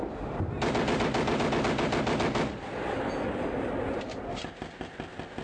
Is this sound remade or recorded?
recorded